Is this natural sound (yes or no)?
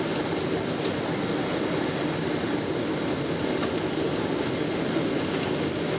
yes